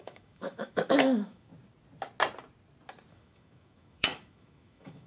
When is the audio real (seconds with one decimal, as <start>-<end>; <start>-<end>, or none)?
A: 1.5-3.1